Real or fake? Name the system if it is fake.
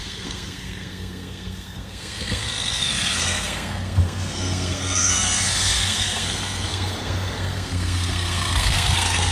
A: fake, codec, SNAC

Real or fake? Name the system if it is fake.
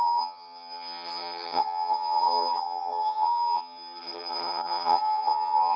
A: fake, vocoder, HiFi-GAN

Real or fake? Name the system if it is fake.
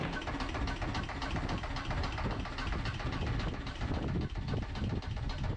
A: real